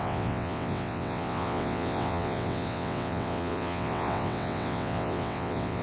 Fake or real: fake